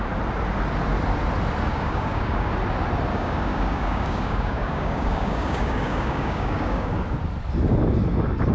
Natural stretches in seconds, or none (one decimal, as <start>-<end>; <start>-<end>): 0.0-1.7; 2.5-3.1; 6.9-8.5